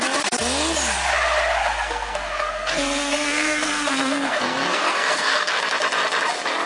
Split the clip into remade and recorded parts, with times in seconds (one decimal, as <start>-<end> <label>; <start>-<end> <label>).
0.0-1.6 recorded; 1.6-5.6 remade; 5.6-6.7 recorded